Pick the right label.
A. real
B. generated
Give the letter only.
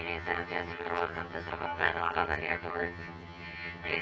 B